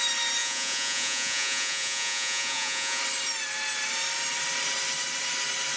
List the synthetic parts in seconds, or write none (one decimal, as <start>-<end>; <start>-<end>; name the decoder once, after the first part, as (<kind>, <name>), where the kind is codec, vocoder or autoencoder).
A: 0.4-3.0 (vocoder, Vocos)